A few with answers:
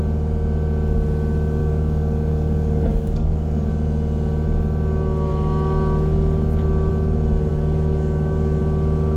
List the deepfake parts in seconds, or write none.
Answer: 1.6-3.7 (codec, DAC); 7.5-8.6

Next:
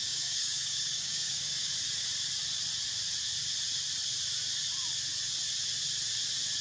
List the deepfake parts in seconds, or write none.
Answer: 0.0-1.7 (codec, DAC)

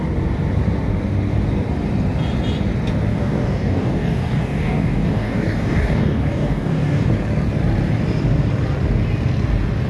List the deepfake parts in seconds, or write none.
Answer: 3.1-7.1 (codec, DAC)

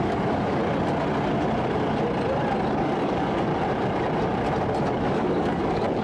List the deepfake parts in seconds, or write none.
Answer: 0.0-0.6 (codec, DAC); 2.7-3.5; 4.9-6.0

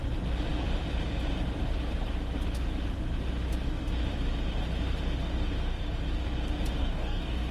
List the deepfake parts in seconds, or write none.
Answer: 6.8-7.5 (codec, DAC)

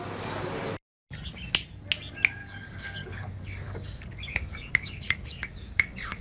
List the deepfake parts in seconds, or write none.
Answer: 2.4-6.2 (codec, DAC)